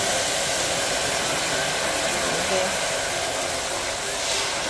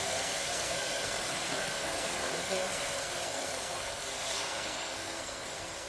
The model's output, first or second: second